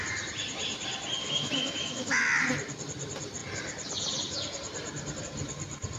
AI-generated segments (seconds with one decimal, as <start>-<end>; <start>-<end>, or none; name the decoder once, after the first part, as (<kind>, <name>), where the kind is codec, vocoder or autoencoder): 1.2-2.2 (autoencoder, DAC-VAE)